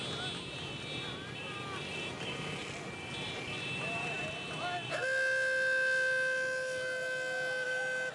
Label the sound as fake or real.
real